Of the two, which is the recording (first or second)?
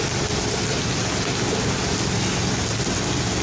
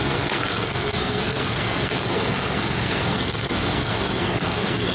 first